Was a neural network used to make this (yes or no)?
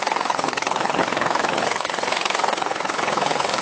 yes